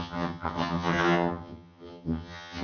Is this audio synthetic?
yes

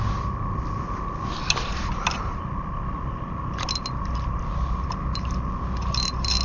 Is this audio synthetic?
no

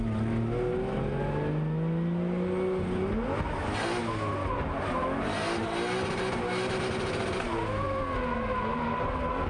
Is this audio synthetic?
no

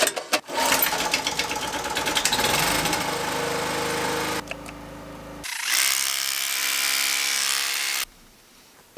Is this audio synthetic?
no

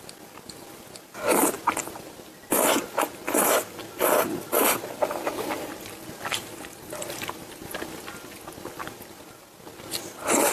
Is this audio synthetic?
no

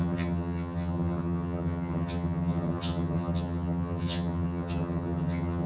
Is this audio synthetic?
yes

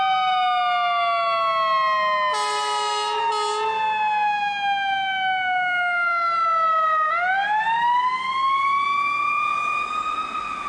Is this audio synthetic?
no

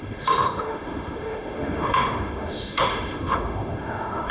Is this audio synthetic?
yes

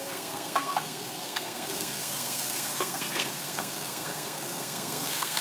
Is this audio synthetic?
yes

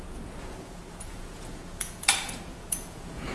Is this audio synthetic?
yes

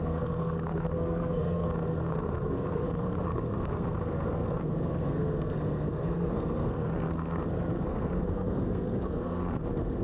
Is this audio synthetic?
yes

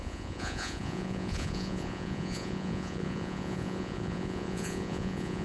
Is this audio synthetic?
yes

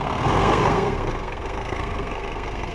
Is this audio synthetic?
yes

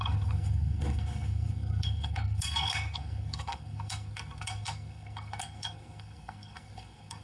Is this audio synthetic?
yes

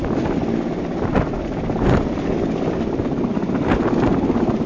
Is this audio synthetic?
no